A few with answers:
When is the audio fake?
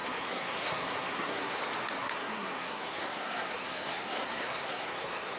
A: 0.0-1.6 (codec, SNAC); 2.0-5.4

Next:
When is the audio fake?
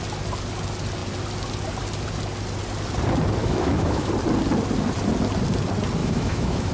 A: 3.4-4.1 (autoencoder, DAC-VAE); 6.0-6.7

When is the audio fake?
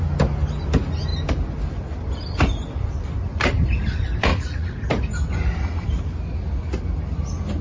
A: 4.3-4.9 (vocoder, Vocos)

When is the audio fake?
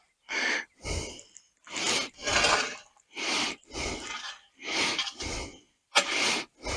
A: none